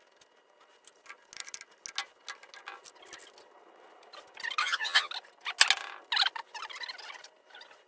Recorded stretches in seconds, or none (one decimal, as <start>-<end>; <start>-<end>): 0.0-4.6; 5.1-7.9